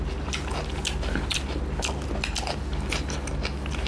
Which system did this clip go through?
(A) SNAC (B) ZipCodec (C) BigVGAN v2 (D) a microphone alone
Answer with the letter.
D